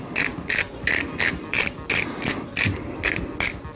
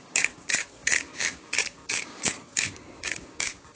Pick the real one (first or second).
first